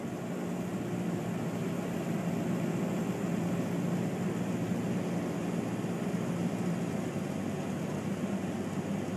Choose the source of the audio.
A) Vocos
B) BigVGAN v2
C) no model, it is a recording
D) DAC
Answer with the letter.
C